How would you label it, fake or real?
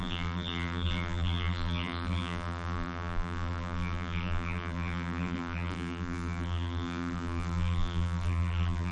fake